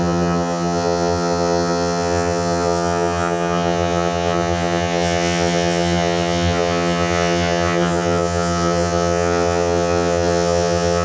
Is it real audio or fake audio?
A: fake